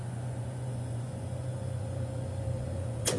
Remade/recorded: remade